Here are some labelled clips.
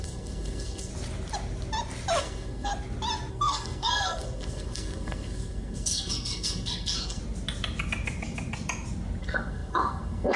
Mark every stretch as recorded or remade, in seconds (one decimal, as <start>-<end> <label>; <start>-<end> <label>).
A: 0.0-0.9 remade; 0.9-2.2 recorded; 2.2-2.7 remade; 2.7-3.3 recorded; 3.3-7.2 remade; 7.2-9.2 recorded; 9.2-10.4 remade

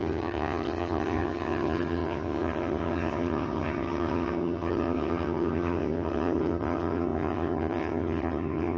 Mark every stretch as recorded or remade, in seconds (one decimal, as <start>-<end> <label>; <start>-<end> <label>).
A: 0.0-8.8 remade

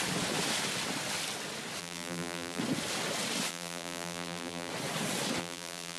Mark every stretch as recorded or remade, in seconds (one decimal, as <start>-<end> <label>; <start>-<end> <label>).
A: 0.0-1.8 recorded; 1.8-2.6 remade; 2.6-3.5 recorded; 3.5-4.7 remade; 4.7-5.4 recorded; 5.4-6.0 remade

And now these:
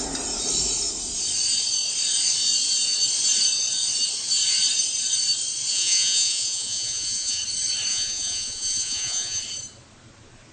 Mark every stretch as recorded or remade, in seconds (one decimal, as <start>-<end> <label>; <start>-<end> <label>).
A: 0.0-5.7 recorded; 5.7-7.4 remade; 7.4-7.9 recorded; 7.9-9.4 remade; 9.4-10.5 recorded

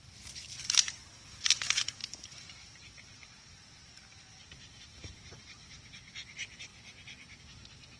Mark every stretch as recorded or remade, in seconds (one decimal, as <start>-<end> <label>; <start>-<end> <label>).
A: 0.0-6.7 remade; 6.7-7.4 recorded; 7.4-8.0 remade